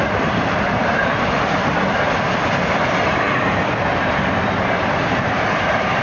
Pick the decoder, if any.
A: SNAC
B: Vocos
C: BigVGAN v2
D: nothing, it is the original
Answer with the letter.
C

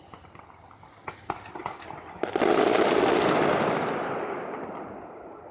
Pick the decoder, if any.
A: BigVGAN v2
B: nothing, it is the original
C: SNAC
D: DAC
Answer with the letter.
B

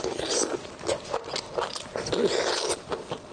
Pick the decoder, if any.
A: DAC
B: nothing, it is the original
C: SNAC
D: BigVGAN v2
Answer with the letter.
B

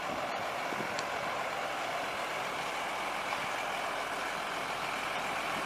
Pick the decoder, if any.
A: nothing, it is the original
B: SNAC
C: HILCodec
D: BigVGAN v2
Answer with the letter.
A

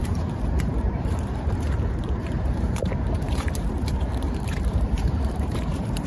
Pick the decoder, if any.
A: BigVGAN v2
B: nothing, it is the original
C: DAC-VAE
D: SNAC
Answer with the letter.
A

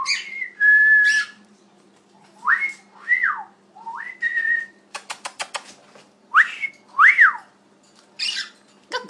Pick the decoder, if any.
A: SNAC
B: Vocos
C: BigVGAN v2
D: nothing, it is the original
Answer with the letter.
D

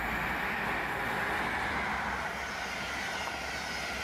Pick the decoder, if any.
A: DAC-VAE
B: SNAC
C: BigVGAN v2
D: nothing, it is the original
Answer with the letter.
D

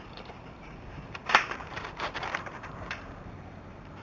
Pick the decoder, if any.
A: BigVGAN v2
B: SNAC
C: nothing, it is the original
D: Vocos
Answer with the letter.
A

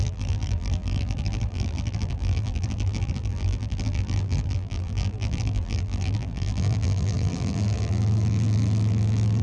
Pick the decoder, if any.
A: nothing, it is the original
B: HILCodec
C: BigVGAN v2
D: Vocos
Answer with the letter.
C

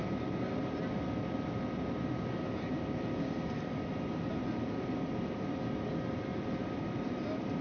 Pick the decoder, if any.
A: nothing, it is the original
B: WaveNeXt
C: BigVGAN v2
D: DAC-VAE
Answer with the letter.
A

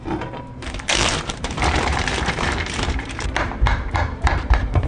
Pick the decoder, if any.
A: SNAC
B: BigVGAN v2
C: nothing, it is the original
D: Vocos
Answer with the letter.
B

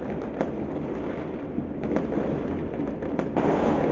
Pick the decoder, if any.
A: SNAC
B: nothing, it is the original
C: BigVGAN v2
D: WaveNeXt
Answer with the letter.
B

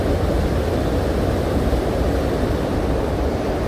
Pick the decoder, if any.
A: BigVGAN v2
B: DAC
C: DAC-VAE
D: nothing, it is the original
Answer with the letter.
A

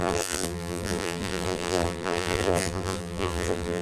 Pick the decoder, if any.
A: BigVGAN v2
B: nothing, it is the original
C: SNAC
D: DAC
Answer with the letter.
A